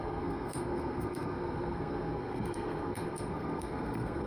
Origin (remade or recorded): remade